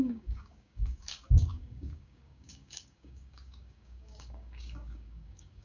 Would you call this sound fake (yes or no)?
yes